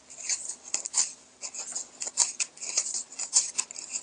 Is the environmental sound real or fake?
real